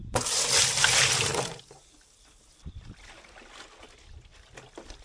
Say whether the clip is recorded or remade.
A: recorded